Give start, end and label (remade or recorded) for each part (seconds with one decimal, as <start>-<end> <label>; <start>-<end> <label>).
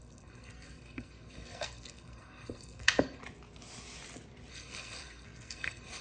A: 0.0-3.2 remade; 3.2-4.5 recorded; 4.5-6.0 remade